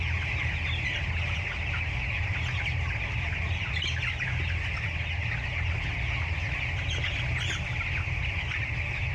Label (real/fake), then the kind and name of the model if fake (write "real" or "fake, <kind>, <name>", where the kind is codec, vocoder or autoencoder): real